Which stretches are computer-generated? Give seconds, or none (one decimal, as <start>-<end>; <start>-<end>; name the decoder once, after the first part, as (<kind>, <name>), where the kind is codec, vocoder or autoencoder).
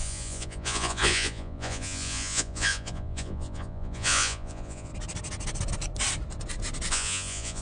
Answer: 0.0-4.9 (vocoder, Vocos); 6.9-7.6